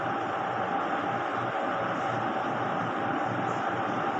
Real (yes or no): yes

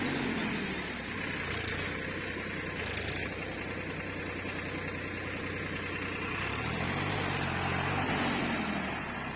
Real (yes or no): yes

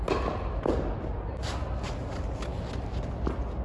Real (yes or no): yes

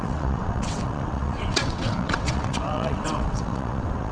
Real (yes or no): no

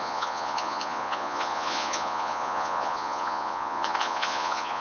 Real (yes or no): no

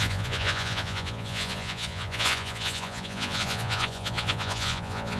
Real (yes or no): no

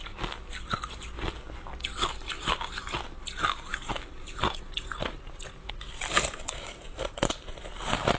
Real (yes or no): yes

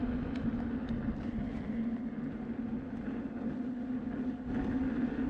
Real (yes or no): yes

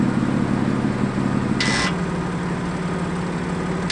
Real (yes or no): yes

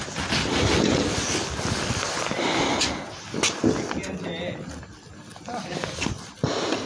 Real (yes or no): yes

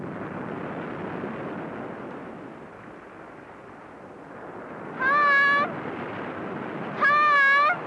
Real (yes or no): yes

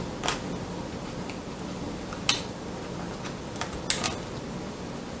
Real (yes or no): yes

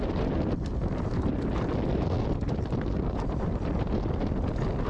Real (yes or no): yes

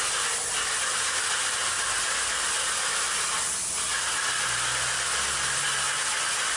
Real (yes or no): yes